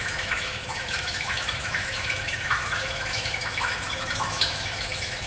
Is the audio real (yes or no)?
no